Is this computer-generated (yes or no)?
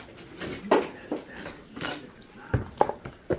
no